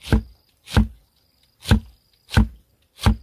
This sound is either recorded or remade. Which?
recorded